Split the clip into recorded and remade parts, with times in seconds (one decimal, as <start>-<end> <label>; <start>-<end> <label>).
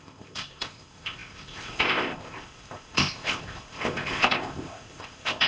0.0-5.5 remade